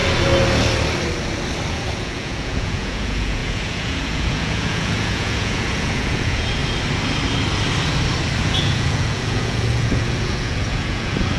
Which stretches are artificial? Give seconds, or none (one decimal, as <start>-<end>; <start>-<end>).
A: 1.7-6.6; 8.4-11.4